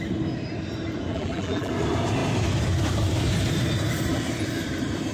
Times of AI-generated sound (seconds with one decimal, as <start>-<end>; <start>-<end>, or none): 1.1-1.7